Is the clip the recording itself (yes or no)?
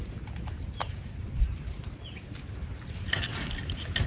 yes